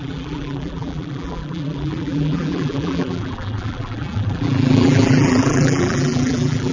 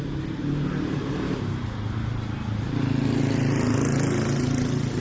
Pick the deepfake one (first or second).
first